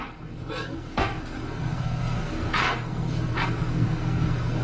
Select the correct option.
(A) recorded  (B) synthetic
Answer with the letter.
B